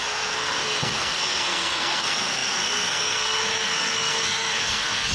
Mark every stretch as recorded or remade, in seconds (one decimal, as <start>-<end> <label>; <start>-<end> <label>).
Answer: 0.0-5.1 remade